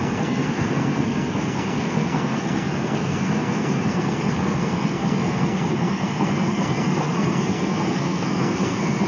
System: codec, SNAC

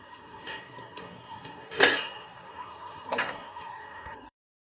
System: codec, SNAC